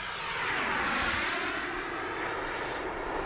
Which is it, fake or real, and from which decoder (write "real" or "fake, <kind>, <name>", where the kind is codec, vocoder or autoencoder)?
real